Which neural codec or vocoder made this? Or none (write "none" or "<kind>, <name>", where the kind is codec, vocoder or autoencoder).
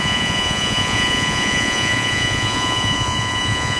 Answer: vocoder, Vocos